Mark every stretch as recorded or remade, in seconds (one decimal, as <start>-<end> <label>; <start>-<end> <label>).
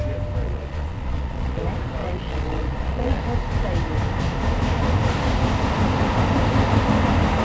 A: 0.0-0.4 recorded; 0.4-1.6 remade; 1.6-2.0 recorded; 2.0-3.2 remade; 3.2-7.4 recorded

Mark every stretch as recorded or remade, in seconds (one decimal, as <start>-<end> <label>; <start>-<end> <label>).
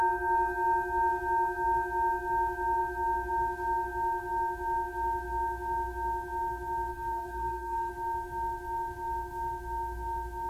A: 0.0-6.9 recorded; 6.9-7.9 remade; 7.9-10.5 recorded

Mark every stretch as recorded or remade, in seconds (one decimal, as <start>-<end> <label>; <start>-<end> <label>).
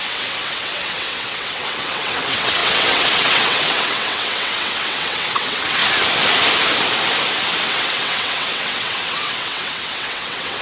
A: 0.0-5.8 remade; 5.8-7.7 recorded; 7.7-10.6 remade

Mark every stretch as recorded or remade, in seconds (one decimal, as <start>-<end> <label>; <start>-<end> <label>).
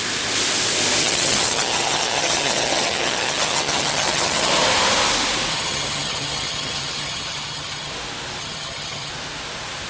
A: 0.0-1.0 recorded; 1.0-4.5 remade; 4.5-5.5 recorded; 5.5-7.9 remade; 7.9-8.4 recorded; 8.4-9.1 remade; 9.1-9.9 recorded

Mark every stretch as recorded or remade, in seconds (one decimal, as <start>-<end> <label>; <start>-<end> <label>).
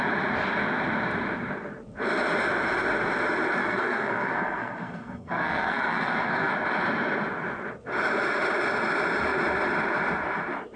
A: 0.0-3.6 recorded; 3.6-6.5 remade; 6.5-10.8 recorded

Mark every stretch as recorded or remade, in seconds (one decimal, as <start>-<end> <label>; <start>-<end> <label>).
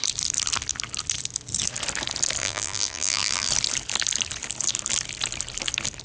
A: 0.0-2.4 recorded; 2.4-3.5 remade; 3.5-6.0 recorded